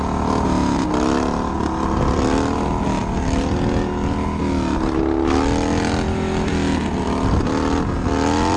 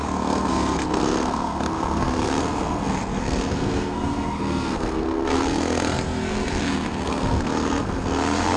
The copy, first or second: second